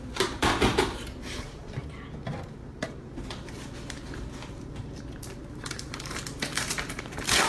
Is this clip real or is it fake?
fake